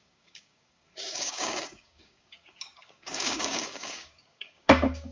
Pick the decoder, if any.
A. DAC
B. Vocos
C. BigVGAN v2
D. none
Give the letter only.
A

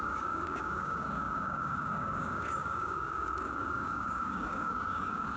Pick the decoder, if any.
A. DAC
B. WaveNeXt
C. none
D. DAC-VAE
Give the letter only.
A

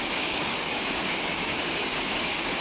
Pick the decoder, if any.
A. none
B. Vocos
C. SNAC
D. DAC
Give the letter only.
D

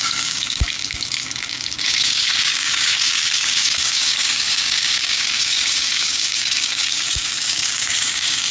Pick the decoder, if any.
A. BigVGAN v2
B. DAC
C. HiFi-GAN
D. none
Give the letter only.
B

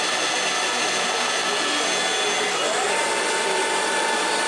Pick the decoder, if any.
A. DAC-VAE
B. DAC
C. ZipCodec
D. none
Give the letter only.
D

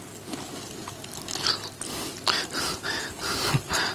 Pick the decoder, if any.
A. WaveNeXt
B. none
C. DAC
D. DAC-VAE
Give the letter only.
B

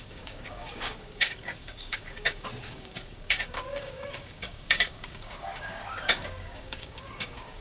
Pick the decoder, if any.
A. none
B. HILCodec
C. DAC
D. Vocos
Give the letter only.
C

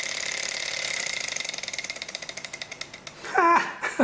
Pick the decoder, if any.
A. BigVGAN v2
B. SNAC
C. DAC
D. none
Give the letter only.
D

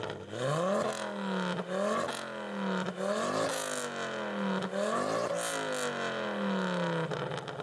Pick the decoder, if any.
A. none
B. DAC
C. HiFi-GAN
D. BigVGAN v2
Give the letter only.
A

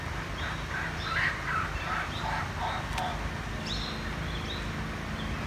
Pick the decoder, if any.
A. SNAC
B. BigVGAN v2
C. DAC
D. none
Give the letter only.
D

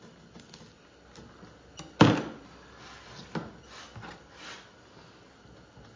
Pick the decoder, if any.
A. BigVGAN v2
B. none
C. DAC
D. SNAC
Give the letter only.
B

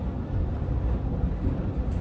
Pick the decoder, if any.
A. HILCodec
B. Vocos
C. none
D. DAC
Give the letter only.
C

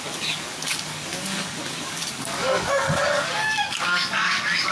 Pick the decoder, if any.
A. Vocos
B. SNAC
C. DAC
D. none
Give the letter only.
C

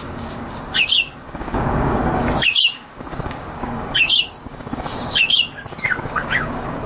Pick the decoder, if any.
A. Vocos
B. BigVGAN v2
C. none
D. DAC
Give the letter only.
D